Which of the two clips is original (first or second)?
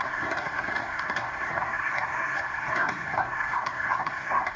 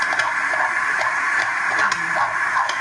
second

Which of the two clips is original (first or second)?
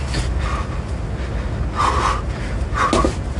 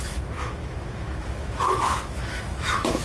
first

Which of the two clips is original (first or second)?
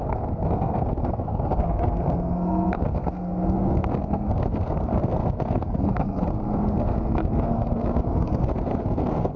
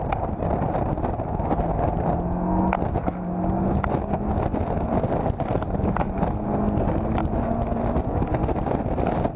second